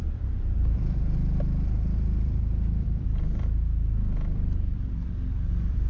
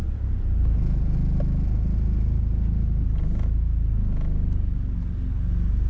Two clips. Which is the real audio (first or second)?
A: second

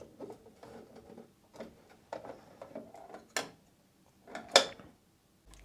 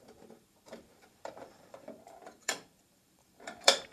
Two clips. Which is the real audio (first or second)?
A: first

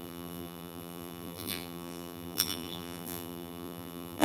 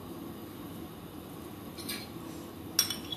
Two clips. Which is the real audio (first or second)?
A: second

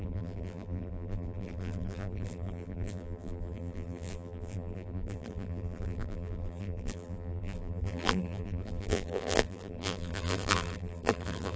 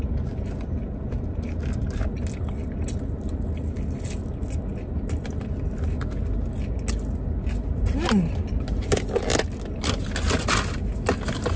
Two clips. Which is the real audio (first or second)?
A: second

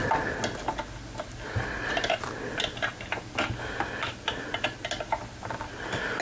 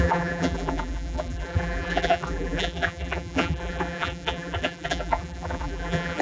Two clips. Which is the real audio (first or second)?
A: first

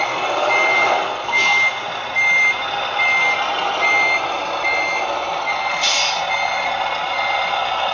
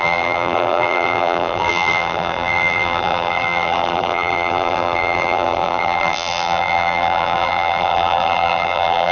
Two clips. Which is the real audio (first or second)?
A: first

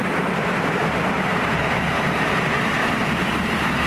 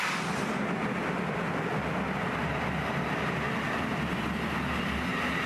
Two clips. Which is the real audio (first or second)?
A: second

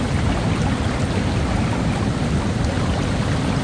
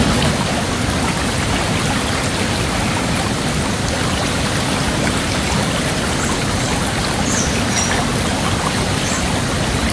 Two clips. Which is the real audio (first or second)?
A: second